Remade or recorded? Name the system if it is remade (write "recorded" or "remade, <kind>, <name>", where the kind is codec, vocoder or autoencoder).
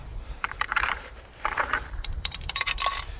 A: remade, vocoder, BigVGAN v2